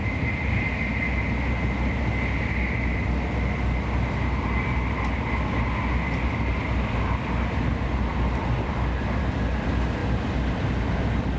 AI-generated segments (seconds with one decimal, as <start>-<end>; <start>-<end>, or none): 0.0-0.5